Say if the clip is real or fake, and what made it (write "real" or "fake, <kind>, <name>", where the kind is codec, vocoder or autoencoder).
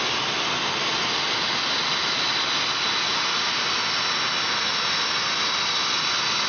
real